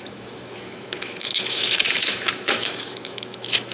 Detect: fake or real fake